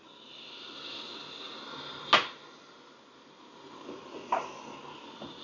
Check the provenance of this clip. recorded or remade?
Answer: recorded